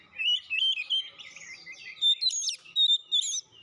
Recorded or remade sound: recorded